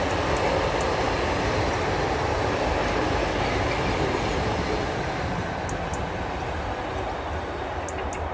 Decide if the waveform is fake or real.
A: real